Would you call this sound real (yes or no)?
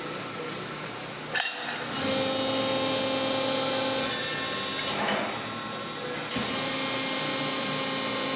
yes